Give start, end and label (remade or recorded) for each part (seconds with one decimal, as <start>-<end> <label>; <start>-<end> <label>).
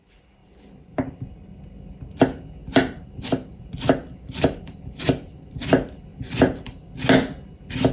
0.0-0.4 recorded; 0.4-1.2 remade; 1.2-2.6 recorded; 2.6-3.6 remade; 3.6-4.0 recorded; 4.0-5.6 remade; 5.6-6.1 recorded; 6.1-6.9 remade; 6.9-7.9 recorded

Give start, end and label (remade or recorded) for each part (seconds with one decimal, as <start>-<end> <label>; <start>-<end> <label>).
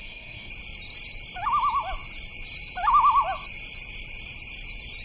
0.0-0.5 remade; 0.5-5.0 recorded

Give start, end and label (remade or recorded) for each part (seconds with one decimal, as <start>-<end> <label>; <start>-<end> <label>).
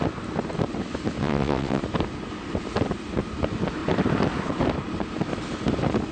0.0-1.2 recorded; 1.2-1.8 remade; 1.8-6.1 recorded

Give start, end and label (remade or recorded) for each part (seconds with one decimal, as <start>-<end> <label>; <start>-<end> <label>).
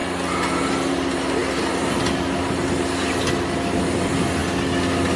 0.0-5.2 recorded